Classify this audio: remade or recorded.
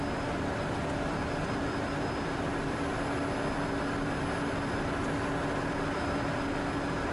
recorded